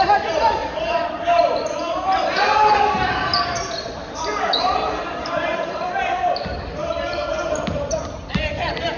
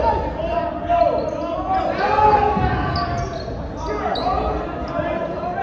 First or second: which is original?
second